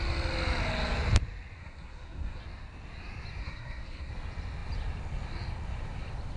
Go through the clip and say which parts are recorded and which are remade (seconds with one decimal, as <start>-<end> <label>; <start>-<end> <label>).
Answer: 0.0-1.6 recorded; 1.6-2.4 remade; 2.4-3.4 recorded; 3.4-4.1 remade; 4.1-6.4 recorded